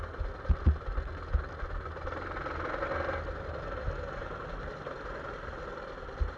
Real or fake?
real